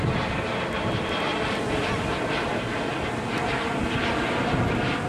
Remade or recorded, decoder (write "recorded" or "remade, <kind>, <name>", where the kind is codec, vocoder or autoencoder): recorded